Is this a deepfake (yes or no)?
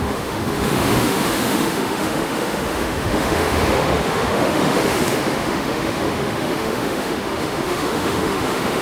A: yes